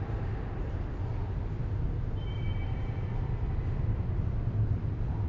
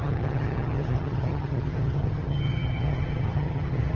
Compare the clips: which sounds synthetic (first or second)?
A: second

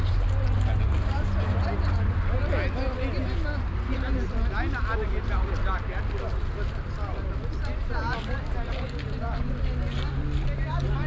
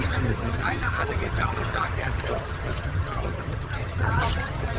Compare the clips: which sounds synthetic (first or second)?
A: second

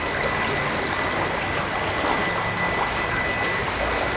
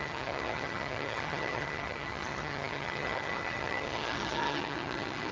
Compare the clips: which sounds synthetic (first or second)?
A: second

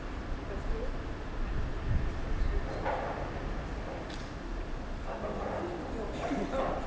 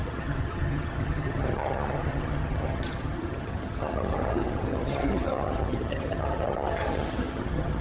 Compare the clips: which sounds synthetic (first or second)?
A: second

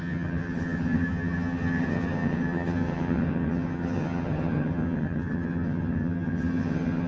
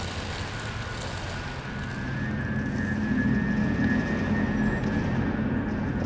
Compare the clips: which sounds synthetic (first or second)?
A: first